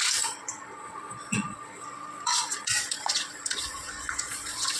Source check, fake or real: fake